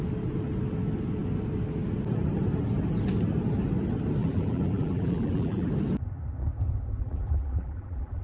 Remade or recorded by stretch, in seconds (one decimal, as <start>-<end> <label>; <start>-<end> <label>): 0.0-4.2 recorded; 4.2-5.7 remade; 5.7-7.0 recorded; 7.0-8.2 remade